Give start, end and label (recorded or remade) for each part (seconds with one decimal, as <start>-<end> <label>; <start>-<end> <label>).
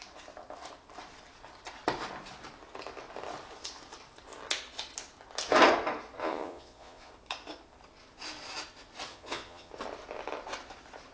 0.0-6.2 recorded; 6.2-7.1 remade; 7.1-9.1 recorded; 9.1-9.7 remade; 9.7-11.1 recorded